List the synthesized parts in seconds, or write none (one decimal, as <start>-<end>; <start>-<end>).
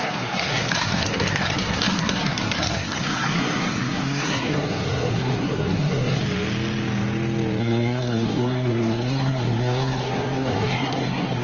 0.0-6.2; 7.6-11.4